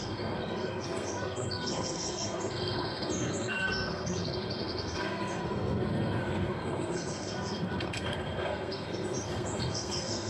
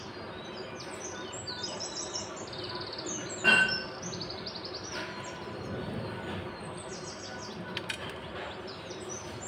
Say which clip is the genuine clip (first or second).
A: second